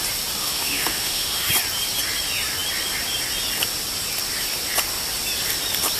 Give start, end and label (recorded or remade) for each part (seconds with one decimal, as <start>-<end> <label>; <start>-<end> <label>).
0.0-0.4 recorded; 0.4-1.5 remade; 1.5-6.0 recorded